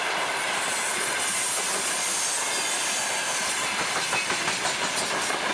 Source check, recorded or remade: recorded